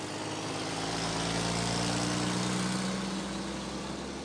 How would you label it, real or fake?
real